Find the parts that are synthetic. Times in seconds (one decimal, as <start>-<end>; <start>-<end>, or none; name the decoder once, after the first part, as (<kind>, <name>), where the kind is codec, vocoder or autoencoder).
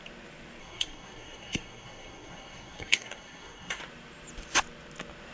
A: 0.6-3.8 (codec, SNAC)